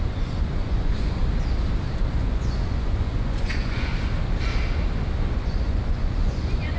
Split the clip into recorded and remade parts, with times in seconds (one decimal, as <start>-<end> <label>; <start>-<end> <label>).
0.0-1.2 remade; 1.2-2.0 recorded; 2.0-3.9 remade; 3.9-5.3 recorded; 5.3-6.8 remade